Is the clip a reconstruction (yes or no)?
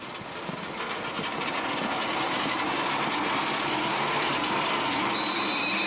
no